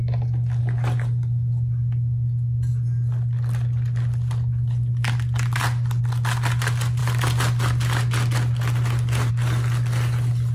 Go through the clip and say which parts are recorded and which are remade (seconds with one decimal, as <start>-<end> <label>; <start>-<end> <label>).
0.0-10.5 recorded

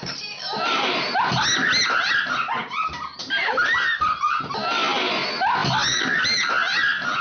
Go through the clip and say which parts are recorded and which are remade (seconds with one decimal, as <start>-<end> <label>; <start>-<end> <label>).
0.0-3.2 recorded; 3.2-4.3 remade; 4.3-5.9 recorded; 5.9-6.5 remade; 6.5-7.2 recorded

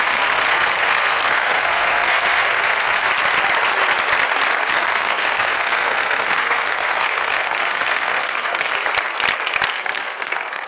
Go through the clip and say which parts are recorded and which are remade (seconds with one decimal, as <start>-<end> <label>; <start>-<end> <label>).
0.0-3.1 remade; 3.1-4.7 recorded; 4.7-8.7 remade; 8.7-9.7 recorded; 9.7-10.7 remade

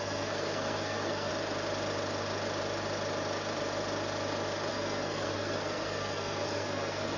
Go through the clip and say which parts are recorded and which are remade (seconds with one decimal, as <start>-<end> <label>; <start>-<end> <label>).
0.0-1.3 remade; 1.3-4.7 recorded; 4.7-7.2 remade